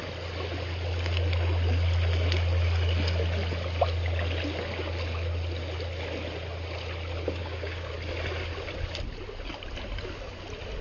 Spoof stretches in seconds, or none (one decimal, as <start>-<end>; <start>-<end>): 7.4-7.9